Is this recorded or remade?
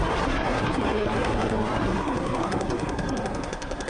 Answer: remade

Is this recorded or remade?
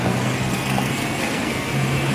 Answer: remade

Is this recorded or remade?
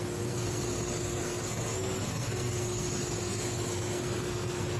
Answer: remade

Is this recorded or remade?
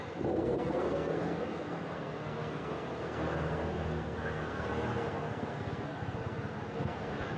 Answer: remade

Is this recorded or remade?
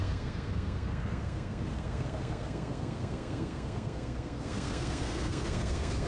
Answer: remade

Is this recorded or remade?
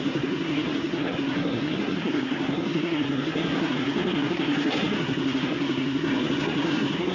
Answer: remade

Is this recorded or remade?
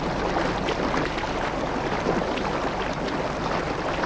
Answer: recorded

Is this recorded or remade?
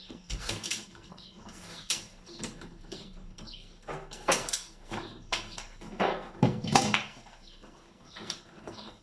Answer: remade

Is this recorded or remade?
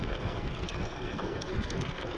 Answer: remade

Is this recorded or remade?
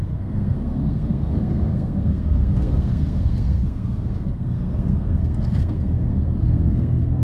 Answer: remade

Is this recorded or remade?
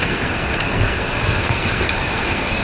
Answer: remade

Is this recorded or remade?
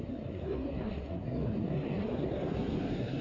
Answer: remade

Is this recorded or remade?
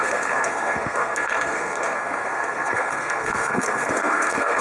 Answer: remade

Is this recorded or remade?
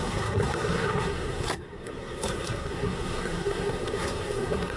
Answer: remade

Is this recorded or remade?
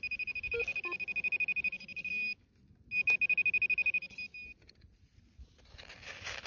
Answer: recorded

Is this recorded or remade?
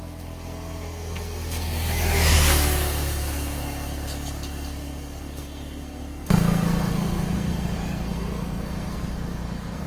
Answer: remade